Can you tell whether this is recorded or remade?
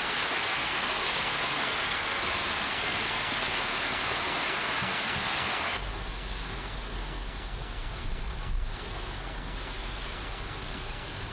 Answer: remade